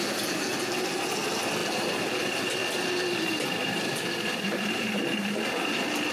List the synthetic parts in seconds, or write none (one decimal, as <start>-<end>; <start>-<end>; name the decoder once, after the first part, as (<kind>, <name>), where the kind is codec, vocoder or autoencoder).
3.6-4.8 (vocoder, BigVGAN v2)